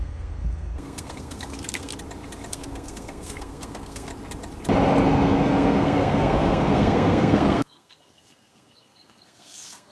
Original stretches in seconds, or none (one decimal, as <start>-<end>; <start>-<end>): 1.9-2.5; 4.1-5.1

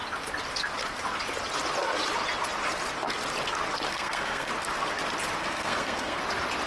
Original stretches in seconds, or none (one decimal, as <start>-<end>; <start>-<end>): 0.0-3.9; 4.5-5.4; 6.2-6.7

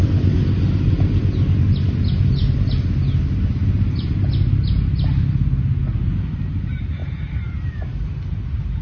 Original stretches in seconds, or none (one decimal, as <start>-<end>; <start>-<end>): 0.0-8.8

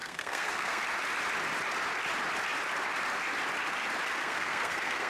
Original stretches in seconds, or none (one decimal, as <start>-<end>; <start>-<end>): 0.8-4.2